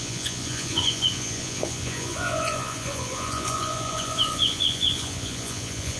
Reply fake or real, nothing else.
fake